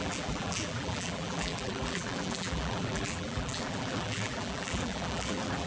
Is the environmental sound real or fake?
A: fake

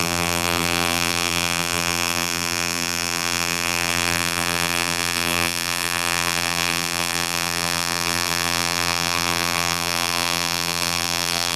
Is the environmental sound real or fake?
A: fake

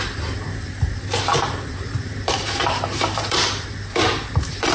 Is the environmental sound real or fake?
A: fake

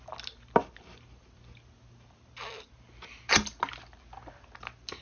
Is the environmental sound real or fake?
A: real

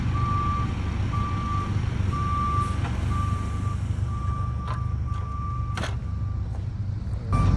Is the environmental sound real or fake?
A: real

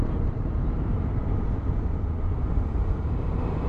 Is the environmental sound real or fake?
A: fake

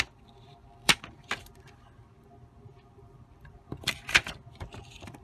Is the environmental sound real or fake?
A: fake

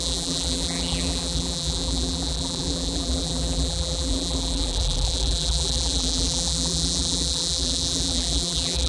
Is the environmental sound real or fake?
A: fake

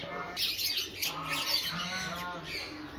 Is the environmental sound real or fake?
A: real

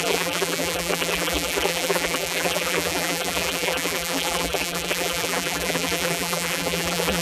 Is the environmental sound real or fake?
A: fake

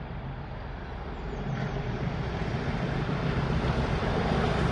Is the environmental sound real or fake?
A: fake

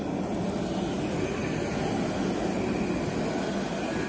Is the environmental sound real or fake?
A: real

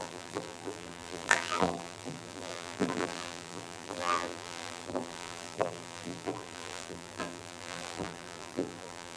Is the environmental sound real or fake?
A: fake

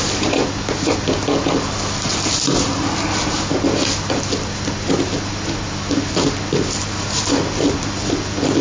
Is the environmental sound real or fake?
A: real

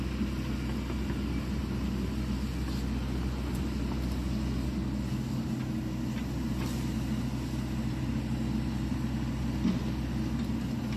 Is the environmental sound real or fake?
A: real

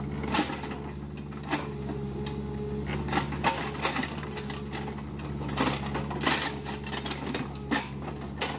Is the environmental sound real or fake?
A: real